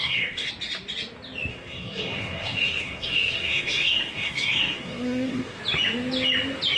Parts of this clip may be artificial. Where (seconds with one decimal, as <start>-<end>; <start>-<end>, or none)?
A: 0.0-0.5; 1.5-5.6